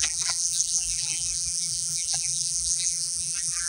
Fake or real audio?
fake